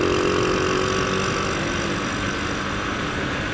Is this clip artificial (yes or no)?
no